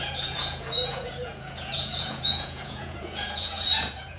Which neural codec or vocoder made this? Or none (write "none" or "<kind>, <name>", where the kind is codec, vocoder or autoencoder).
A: vocoder, Vocos